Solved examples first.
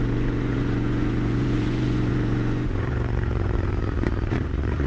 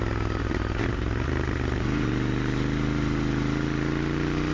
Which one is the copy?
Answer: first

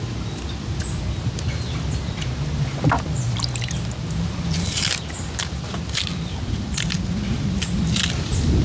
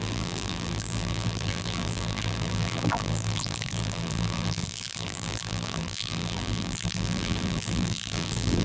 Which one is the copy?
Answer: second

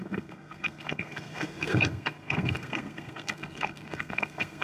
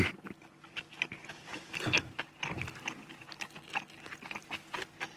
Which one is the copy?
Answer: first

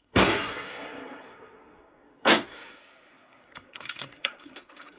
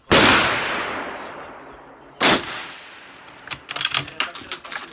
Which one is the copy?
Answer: first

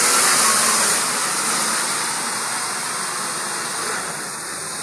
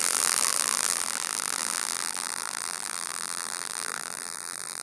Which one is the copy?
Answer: second